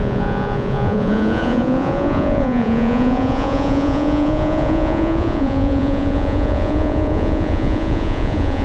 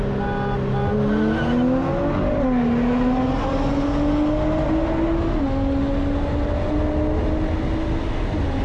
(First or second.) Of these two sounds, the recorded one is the second